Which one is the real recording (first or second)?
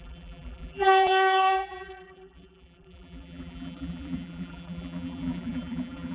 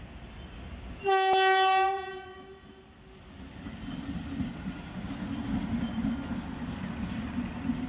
second